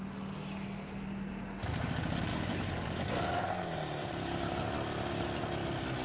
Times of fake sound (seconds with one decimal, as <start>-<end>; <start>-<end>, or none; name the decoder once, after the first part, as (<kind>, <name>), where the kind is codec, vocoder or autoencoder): 2.3-4.6 (vocoder, BigVGAN v2)

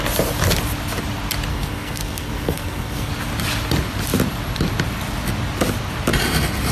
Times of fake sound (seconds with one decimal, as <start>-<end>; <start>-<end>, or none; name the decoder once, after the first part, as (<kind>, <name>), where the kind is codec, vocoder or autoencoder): 1.5-3.1 (codec, SNAC)

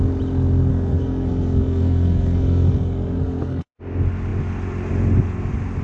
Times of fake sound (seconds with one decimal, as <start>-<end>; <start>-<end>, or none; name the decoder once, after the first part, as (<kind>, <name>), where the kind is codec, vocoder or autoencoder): 0.7-3.8 (codec, SNAC)

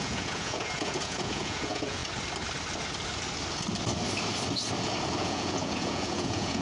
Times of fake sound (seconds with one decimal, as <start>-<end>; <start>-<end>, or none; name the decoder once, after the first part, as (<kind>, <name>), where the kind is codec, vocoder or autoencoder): 0.0-2.0 (vocoder, Vocos); 5.2-6.6

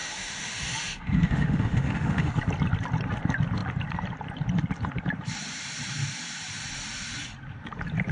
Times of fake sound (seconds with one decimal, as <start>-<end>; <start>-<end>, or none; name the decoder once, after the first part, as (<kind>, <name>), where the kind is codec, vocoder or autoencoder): 0.0-2.3 (autoencoder, DAC-VAE)

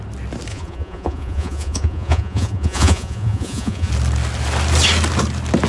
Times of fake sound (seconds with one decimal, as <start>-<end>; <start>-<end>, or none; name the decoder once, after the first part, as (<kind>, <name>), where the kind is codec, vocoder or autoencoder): 0.5-3.9 (vocoder, Vocos)

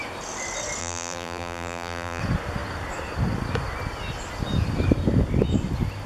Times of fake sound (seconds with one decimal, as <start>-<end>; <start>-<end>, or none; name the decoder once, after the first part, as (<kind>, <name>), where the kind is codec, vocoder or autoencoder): 0.8-2.2 (vocoder, BigVGAN v2)